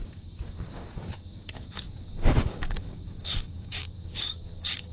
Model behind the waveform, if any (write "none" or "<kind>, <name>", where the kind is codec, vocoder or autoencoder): codec, DAC